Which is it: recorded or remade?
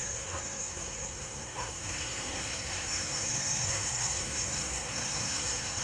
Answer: remade